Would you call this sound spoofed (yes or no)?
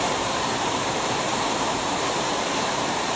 yes